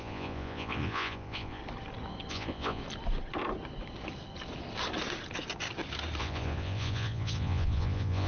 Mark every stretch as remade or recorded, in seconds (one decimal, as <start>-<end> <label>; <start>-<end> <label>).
0.0-1.6 remade; 1.6-2.3 recorded; 2.3-2.8 remade; 2.8-6.2 recorded; 6.2-8.3 remade